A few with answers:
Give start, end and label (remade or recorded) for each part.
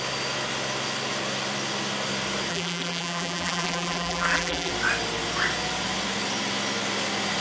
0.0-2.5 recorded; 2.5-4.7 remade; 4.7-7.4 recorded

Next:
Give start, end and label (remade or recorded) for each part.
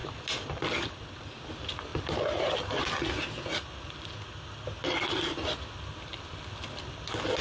0.0-1.5 remade; 1.5-1.9 recorded; 1.9-2.8 remade; 2.8-7.4 recorded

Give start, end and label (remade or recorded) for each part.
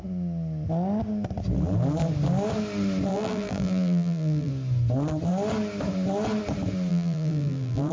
0.0-3.1 recorded; 3.1-4.5 remade; 4.5-6.9 recorded; 6.9-7.9 remade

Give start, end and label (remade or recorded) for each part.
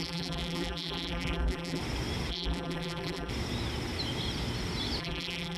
0.0-1.8 remade; 1.8-2.3 recorded; 2.3-3.3 remade; 3.3-5.0 recorded; 5.0-5.6 remade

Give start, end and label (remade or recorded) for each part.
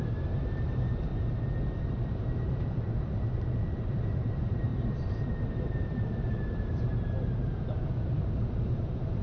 0.0-1.1 remade; 1.1-2.1 recorded; 2.1-9.2 remade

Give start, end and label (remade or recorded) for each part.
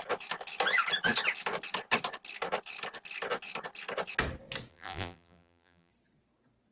0.0-4.7 recorded; 4.7-5.9 remade; 5.9-6.7 recorded